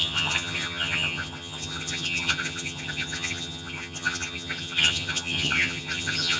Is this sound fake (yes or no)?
yes